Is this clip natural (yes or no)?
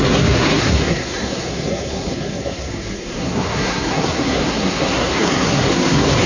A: no